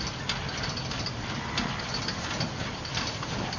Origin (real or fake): real